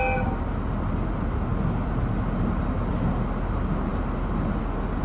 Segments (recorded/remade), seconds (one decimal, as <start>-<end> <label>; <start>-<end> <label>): 0.0-5.0 recorded